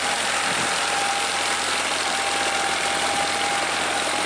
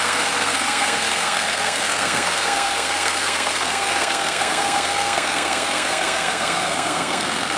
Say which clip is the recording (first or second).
first